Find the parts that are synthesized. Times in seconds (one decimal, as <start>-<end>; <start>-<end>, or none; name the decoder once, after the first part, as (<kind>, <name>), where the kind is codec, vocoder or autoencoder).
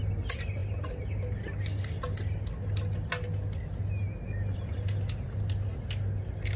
none